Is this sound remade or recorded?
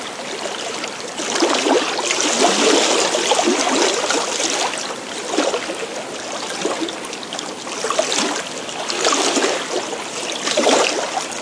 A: recorded